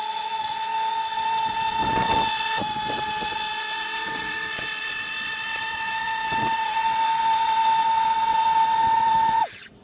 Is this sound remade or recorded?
remade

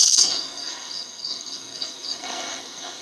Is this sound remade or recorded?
remade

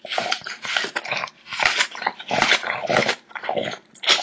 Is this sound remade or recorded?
recorded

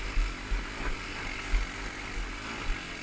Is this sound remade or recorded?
recorded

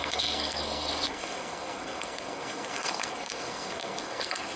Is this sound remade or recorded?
remade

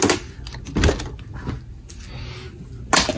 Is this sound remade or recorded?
recorded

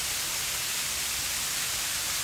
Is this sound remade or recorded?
recorded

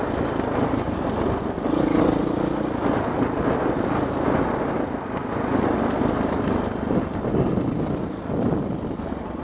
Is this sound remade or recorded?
recorded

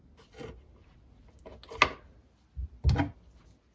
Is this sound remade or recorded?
recorded